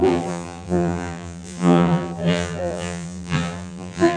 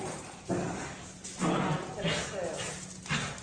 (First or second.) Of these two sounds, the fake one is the first